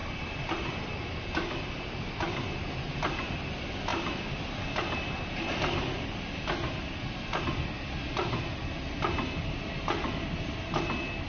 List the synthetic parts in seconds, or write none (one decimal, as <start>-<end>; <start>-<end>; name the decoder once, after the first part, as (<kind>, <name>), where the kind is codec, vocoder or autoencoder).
none